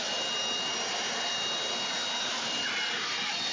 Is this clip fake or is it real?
real